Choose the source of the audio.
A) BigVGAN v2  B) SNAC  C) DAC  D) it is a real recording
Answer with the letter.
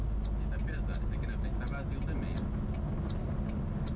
D